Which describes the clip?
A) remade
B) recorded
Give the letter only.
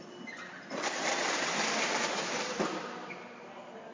B